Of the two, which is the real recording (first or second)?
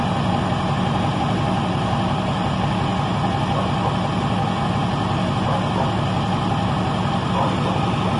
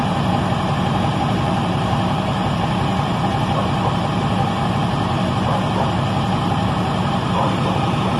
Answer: first